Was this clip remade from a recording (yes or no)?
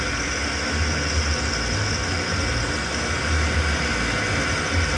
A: no